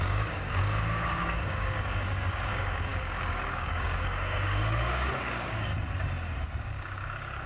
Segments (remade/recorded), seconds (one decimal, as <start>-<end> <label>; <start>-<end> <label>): 0.0-5.7 remade; 5.7-6.6 recorded; 6.6-7.5 remade